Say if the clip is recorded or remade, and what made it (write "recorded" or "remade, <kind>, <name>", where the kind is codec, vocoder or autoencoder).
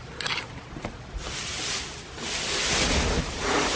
recorded